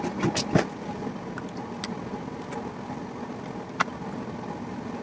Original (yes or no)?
yes